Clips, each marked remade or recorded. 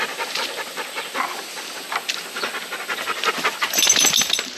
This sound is recorded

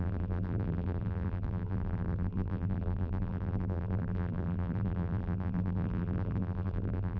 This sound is remade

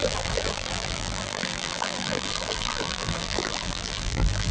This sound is remade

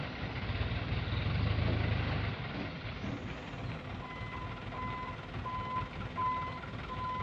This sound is recorded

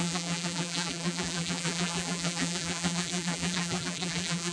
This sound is remade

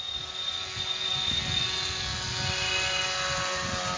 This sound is recorded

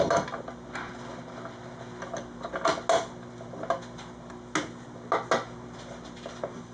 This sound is recorded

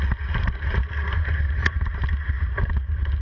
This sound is recorded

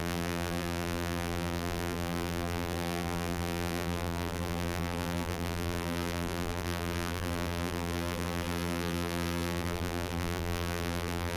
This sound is remade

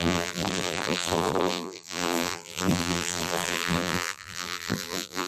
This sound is remade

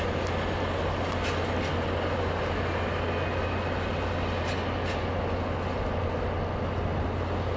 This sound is recorded